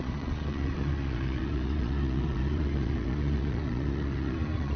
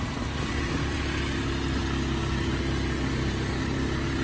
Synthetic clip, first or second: first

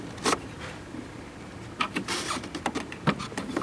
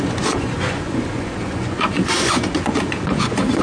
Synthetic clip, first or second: second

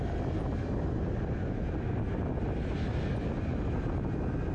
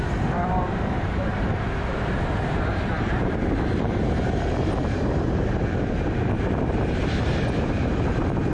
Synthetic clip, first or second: second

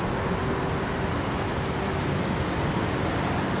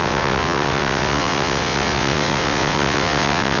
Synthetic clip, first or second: second